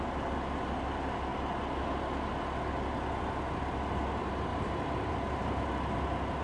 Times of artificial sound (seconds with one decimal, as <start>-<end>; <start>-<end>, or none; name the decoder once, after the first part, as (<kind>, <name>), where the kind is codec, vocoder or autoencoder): none